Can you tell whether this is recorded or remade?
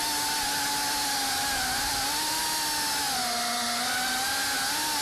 recorded